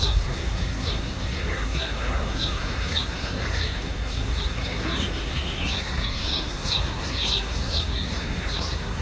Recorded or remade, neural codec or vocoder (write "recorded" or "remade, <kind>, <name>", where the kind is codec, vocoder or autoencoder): remade, codec, SNAC